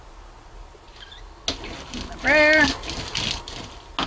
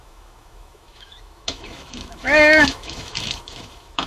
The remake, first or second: second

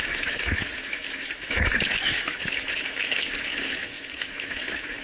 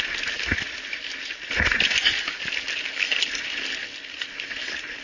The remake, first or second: first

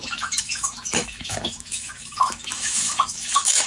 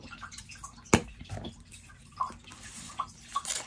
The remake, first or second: first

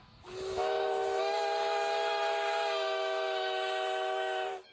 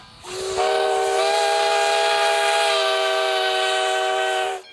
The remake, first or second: first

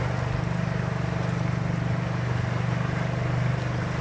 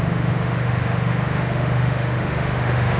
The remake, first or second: second